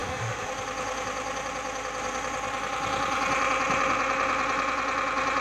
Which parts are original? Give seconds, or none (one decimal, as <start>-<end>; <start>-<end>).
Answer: 0.5-5.4